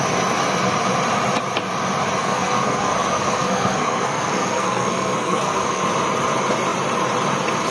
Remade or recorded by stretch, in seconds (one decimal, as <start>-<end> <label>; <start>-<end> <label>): 0.0-2.2 recorded; 2.2-5.8 remade; 5.8-7.7 recorded